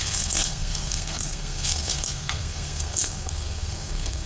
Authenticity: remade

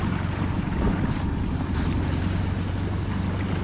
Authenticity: recorded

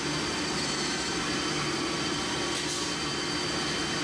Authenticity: recorded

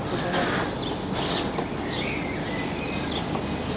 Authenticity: recorded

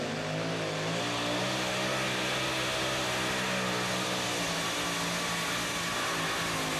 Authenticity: recorded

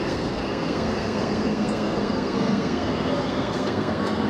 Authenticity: remade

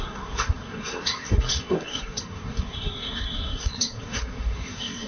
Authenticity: remade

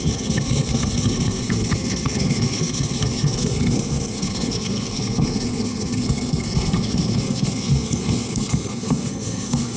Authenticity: remade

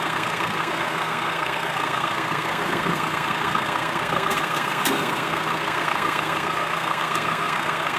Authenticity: remade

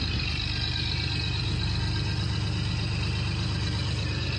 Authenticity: recorded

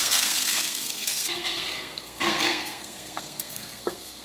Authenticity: remade